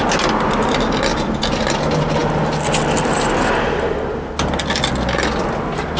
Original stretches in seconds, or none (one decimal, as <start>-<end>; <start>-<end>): 0.0-6.0